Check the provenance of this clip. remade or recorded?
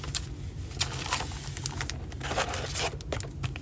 recorded